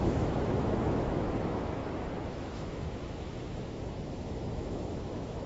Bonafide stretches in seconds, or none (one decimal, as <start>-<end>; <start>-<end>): 1.8-2.3